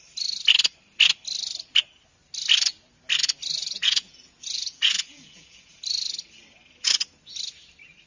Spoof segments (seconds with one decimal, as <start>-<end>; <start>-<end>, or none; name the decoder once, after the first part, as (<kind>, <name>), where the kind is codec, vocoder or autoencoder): 3.6-5.7 (vocoder, Vocos)